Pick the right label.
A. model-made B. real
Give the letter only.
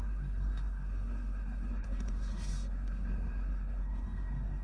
A